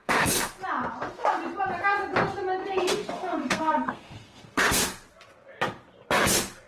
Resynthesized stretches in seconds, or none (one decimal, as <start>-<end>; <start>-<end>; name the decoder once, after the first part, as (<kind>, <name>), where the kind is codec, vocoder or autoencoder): 0.0-0.5 (codec, SNAC); 2.6-4.8